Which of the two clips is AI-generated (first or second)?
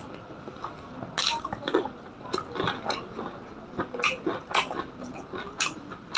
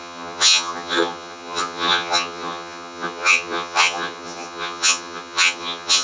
second